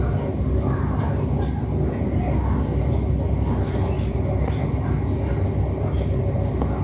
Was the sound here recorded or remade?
recorded